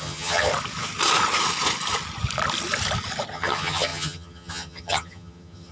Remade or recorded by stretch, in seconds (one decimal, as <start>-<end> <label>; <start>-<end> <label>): 0.0-0.5 remade; 0.5-3.3 recorded; 3.3-5.7 remade